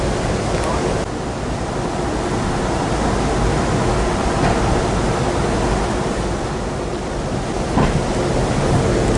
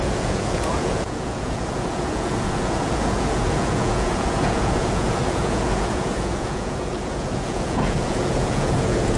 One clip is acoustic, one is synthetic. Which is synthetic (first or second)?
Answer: second